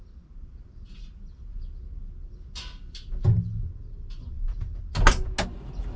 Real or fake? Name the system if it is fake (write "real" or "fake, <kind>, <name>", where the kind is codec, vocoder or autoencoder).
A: real